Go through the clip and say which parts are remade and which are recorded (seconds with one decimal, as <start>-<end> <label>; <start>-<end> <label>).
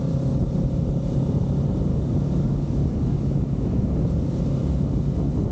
0.0-1.9 recorded; 1.9-3.9 remade; 3.9-5.5 recorded